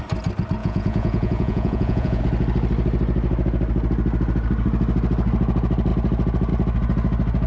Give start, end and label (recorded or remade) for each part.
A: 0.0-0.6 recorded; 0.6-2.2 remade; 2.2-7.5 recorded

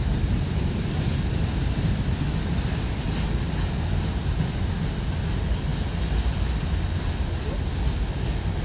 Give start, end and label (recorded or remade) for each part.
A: 0.0-8.6 recorded